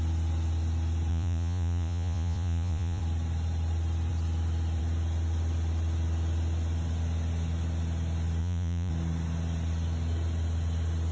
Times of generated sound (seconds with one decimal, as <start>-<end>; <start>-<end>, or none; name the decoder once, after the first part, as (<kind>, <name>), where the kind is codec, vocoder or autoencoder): 1.1-3.0 (vocoder, Vocos); 8.4-8.9